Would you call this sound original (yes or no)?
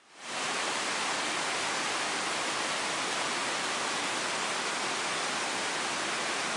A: yes